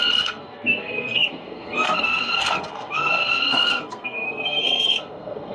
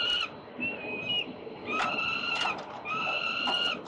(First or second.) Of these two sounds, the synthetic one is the first